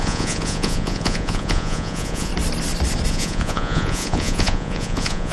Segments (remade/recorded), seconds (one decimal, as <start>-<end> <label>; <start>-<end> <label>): 0.0-2.3 remade; 2.3-3.1 recorded; 3.1-5.3 remade